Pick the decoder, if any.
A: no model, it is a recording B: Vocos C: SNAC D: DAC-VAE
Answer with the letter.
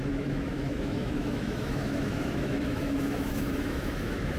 D